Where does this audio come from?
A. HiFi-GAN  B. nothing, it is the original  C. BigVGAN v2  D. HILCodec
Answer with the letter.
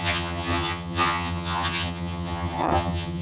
A